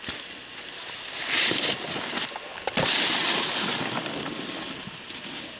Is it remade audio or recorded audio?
recorded